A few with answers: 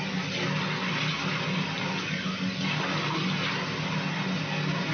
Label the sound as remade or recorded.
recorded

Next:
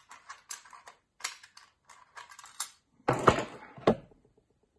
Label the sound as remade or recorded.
recorded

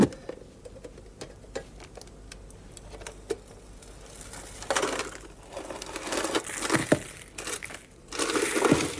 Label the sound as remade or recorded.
recorded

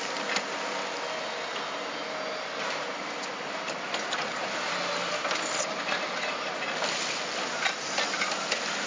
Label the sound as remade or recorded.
recorded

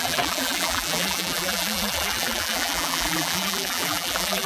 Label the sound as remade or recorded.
remade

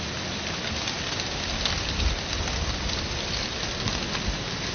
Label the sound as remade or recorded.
recorded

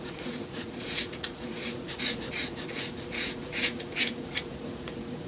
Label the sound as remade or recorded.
remade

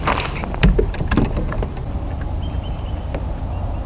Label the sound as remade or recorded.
recorded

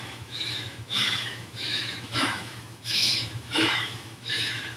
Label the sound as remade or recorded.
remade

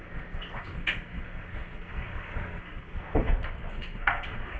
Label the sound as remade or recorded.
remade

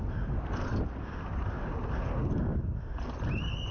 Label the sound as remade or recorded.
recorded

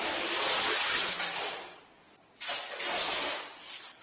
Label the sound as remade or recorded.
recorded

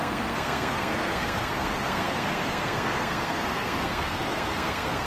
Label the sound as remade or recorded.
remade